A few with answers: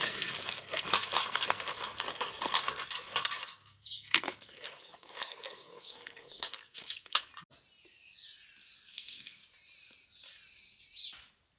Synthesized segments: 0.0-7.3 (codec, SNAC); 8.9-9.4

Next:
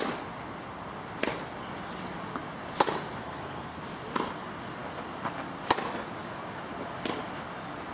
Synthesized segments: 3.2-3.8 (codec, SNAC)

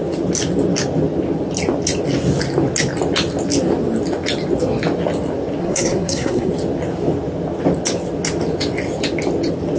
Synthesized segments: 5.6-6.5 (codec, SNAC)

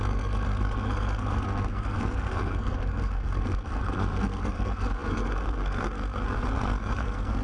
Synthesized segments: 0.0-7.4 (codec, SNAC)

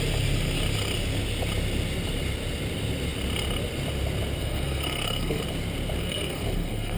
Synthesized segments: 4.4-5.4 (codec, SNAC); 6.0-7.0